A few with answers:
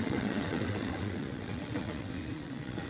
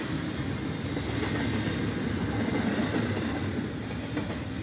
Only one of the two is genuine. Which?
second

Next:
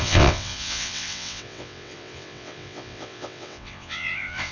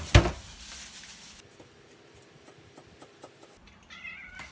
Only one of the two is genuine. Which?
second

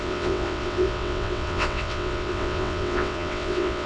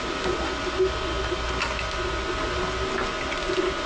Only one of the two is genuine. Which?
second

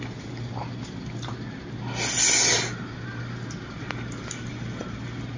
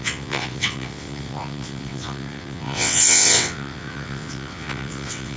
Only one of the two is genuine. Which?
first